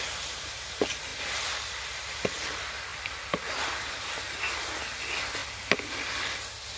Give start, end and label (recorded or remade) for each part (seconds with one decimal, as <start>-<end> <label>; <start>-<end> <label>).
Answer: 0.0-1.1 recorded; 1.1-1.7 remade; 1.7-2.9 recorded; 2.9-3.9 remade; 3.9-6.8 recorded